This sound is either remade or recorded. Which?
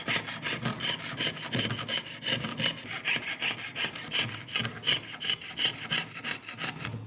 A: recorded